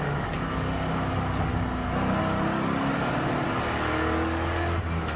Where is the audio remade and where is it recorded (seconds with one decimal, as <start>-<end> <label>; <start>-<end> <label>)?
0.0-1.5 remade; 1.5-2.2 recorded; 2.2-2.9 remade; 2.9-3.5 recorded; 3.5-5.2 remade